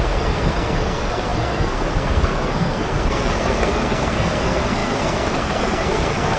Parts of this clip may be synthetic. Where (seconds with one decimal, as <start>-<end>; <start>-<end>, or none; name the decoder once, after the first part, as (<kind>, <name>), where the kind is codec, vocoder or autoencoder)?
0.0-6.4 (codec, SNAC)